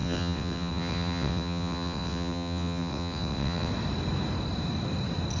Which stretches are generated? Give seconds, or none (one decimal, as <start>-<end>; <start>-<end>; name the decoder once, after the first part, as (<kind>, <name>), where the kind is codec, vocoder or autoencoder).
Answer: 0.0-3.7 (vocoder, WaveNeXt)

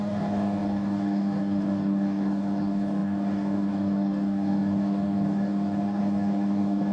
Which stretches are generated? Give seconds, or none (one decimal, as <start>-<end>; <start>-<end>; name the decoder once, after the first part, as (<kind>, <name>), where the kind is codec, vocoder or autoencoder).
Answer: 0.0-6.9 (codec, DAC)

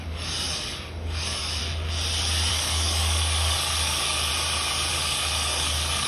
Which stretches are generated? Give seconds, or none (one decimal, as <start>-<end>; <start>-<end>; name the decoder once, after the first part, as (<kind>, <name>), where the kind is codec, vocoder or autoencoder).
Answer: 0.0-1.6 (codec, DAC); 2.5-4.3; 4.9-6.1

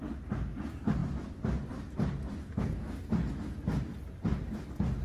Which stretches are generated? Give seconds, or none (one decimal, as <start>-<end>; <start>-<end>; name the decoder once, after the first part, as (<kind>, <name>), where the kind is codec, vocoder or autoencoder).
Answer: 2.4-3.1 (codec, DAC)

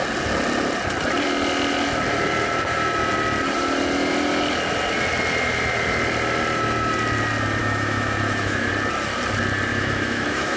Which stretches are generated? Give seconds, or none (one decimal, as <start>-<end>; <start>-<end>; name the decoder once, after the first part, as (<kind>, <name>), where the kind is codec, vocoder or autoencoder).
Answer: 7.6-8.7 (autoencoder, DAC-VAE); 9.7-10.6

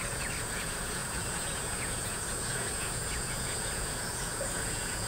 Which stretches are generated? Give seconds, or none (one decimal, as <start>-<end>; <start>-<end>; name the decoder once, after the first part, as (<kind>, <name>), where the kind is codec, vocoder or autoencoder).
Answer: 0.0-5.1 (vocoder, Vocos)

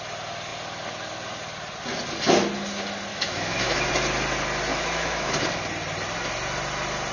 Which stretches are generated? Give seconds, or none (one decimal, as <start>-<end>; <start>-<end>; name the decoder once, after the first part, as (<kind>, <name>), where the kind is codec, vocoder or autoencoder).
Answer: 3.1-3.9 (autoencoder, DAC-VAE); 4.7-5.4